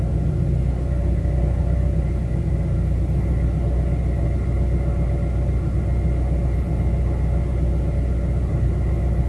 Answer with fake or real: real